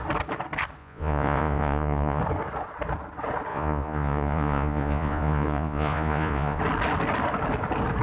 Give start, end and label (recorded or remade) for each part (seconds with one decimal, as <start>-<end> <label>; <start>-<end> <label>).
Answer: 0.0-0.8 recorded; 0.8-2.2 remade; 2.2-3.5 recorded; 3.5-6.6 remade; 6.6-8.0 recorded